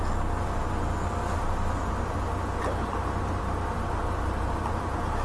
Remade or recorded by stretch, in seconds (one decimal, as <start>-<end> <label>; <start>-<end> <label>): 0.0-4.0 recorded; 4.0-5.2 remade